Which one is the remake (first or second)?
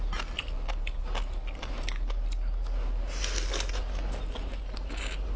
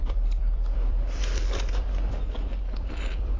second